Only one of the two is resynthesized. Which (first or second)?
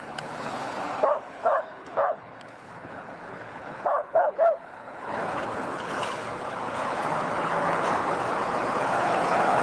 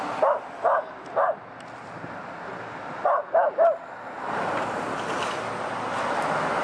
first